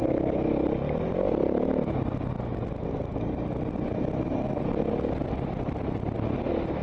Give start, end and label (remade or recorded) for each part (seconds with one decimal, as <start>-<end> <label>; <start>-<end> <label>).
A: 0.0-6.8 recorded